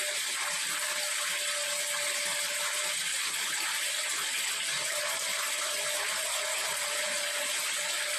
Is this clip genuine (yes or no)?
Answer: yes